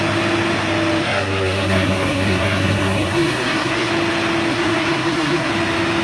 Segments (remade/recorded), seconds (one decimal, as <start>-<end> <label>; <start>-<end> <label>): 0.0-1.0 recorded; 1.0-3.9 remade; 3.9-4.5 recorded; 4.5-5.5 remade; 5.5-6.0 recorded